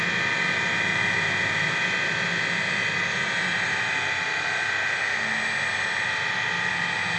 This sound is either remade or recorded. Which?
recorded